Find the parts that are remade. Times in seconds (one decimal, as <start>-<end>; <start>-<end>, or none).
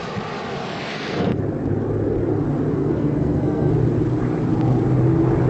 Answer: 0.6-1.4; 2.8-3.7